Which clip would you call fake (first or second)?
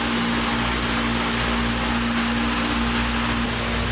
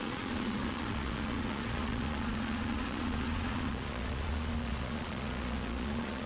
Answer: second